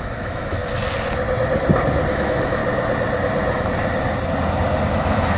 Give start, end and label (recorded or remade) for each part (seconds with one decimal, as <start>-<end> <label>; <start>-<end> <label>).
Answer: 0.0-0.6 remade; 0.6-2.1 recorded; 2.1-2.6 remade; 2.6-4.9 recorded; 4.9-5.4 remade